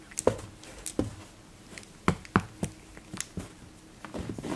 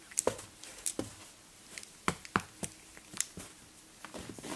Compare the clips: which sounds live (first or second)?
first